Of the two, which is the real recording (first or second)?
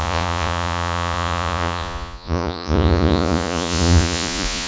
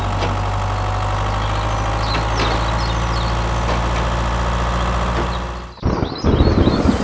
second